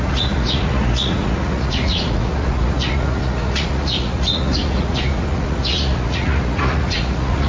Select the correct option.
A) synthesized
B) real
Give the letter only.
A